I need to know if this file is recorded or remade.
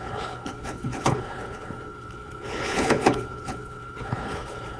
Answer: remade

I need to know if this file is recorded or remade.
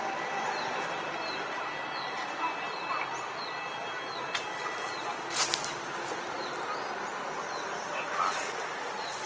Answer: recorded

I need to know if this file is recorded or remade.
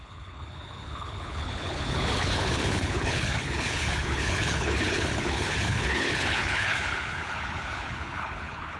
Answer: remade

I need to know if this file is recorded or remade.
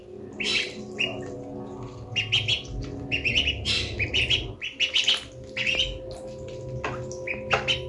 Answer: recorded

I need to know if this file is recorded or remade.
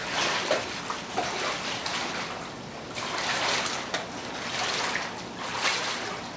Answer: recorded